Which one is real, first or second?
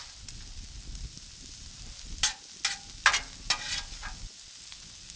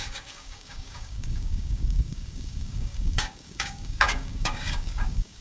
first